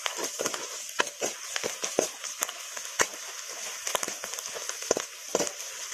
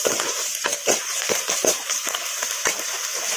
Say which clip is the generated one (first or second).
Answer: second